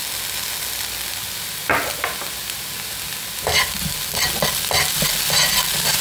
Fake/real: real